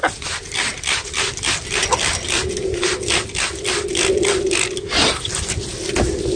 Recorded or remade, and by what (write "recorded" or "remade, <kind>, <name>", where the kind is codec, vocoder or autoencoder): recorded